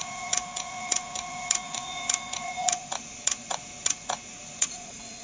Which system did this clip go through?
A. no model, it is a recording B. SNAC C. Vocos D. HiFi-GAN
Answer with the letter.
C